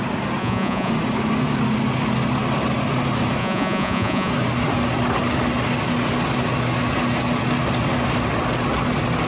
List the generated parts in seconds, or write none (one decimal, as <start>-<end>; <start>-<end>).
0.4-0.9; 3.4-4.3

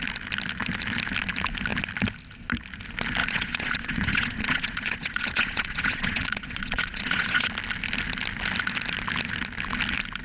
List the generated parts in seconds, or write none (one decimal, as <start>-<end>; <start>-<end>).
3.2-7.5

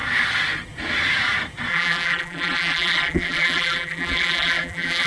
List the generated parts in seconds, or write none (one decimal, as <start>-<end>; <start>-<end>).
1.7-5.1

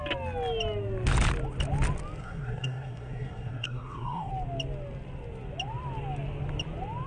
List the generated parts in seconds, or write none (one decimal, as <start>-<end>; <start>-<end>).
2.2-4.3

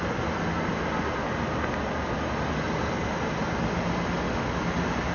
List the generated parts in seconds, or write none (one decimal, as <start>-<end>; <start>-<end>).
none

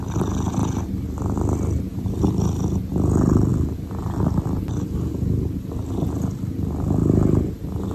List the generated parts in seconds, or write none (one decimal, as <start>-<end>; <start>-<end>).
none